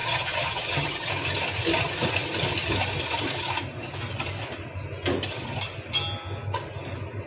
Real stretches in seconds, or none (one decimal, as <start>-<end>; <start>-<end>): 1.1-7.3